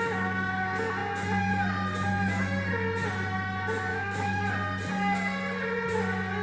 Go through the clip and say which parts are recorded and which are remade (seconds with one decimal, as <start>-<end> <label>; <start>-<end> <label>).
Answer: 0.0-3.9 recorded; 3.9-4.5 remade; 4.5-6.4 recorded